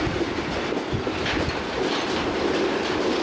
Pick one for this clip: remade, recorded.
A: recorded